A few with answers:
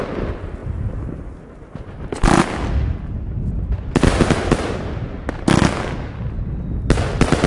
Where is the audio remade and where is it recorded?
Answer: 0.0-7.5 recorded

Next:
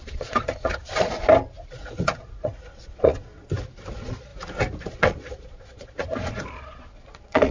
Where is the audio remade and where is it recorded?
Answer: 0.0-1.2 remade; 1.2-1.7 recorded; 1.7-3.3 remade; 3.3-3.9 recorded; 3.9-4.3 remade; 4.3-4.8 recorded; 4.8-7.5 remade